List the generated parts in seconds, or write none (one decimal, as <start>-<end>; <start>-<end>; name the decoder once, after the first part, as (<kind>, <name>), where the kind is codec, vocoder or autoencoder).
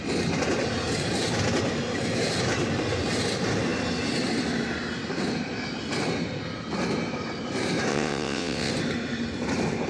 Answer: 7.9-8.7 (vocoder, WaveNeXt)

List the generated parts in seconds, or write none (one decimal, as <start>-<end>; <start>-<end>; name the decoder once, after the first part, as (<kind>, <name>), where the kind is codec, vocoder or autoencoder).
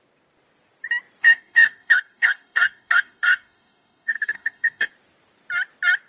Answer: 1.2-4.9 (codec, DAC)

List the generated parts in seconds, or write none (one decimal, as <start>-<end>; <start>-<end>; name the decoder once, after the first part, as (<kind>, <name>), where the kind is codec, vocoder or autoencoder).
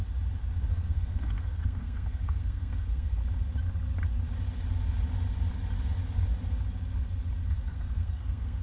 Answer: 0.7-3.2 (codec, SNAC); 7.5-8.6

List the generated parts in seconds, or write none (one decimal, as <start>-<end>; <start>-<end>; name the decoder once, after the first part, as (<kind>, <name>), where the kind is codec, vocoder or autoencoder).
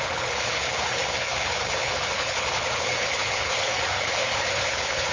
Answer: 0.0-5.1 (codec, HILCodec)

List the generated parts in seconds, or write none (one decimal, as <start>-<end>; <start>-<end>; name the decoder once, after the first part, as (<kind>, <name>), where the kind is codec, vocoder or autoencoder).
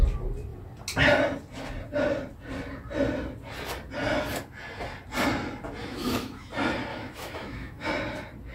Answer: 5.8-6.5 (autoencoder, DAC-VAE); 6.9-7.9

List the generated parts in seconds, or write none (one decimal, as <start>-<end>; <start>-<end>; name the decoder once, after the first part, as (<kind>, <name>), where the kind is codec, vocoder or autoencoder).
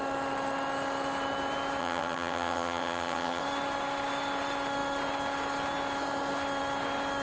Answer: 1.8-3.4 (vocoder, HiFi-GAN)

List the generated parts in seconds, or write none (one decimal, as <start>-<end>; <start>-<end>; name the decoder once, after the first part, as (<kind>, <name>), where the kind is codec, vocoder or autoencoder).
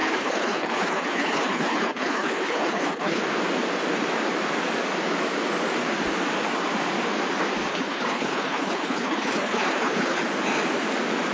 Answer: 0.0-3.2 (codec, HILCodec); 7.7-10.2